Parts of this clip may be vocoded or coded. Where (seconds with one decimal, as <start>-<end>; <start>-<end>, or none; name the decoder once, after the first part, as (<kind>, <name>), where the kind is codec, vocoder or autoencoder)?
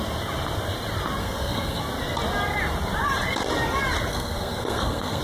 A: 1.2-1.8 (codec, SNAC); 4.1-5.2